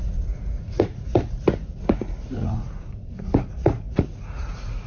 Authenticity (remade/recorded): remade